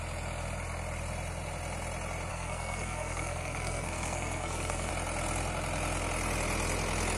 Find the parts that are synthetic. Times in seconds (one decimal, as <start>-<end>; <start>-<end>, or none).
2.3-4.9